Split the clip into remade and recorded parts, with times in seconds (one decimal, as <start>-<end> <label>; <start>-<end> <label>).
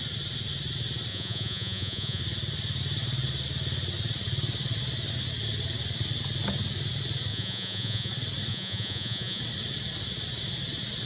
0.0-1.1 recorded; 1.1-2.2 remade; 2.2-7.3 recorded; 7.3-8.1 remade; 8.1-8.5 recorded; 8.5-9.4 remade; 9.4-11.1 recorded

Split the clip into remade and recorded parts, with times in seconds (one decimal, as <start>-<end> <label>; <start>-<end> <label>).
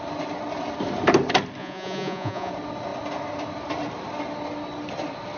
0.0-1.6 recorded; 1.6-2.5 remade; 2.5-5.4 recorded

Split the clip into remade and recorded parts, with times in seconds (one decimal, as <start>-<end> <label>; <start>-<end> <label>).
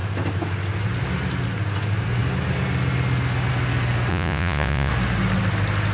0.0-4.1 recorded; 4.1-4.9 remade; 4.9-5.9 recorded